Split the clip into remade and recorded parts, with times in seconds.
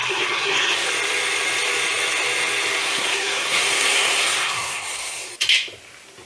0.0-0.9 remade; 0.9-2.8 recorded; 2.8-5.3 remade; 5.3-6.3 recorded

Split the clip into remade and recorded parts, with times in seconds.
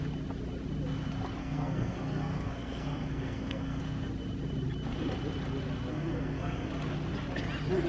0.0-1.4 recorded; 1.4-3.8 remade; 3.8-5.9 recorded; 5.9-6.7 remade; 6.7-7.9 recorded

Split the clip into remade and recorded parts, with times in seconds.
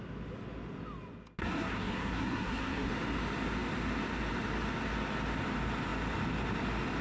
0.0-1.4 recorded; 1.4-2.9 remade; 2.9-7.0 recorded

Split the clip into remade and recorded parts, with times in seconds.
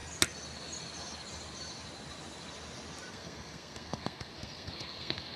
0.0-3.1 recorded; 3.1-5.4 remade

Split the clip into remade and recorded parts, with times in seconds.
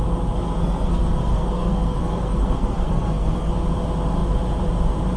0.0-0.6 recorded; 0.6-3.5 remade; 3.5-5.2 recorded